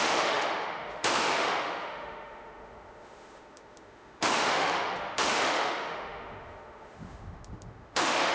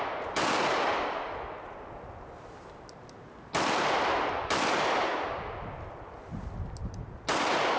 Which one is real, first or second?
second